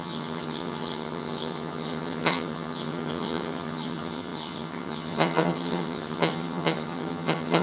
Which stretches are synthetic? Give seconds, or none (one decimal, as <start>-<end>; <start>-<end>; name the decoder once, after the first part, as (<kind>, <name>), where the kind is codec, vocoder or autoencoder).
0.0-7.6 (vocoder, HiFi-GAN)